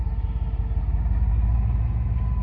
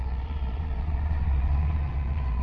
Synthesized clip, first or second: second